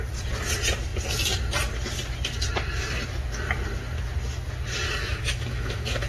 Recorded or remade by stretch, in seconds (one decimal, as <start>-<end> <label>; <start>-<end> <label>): 0.0-5.0 recorded; 5.0-6.1 remade